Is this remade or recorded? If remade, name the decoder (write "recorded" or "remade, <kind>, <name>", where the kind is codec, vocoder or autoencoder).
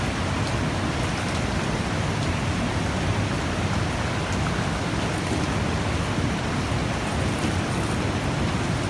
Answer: recorded